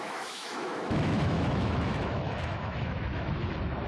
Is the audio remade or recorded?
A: remade